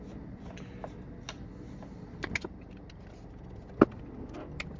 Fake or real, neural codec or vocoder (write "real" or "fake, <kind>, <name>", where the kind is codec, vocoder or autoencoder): real